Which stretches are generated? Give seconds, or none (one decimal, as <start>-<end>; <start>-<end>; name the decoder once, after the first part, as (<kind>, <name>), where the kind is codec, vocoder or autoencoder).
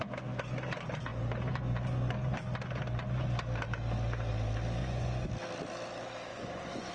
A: 4.8-5.3 (vocoder, Vocos); 6.3-6.9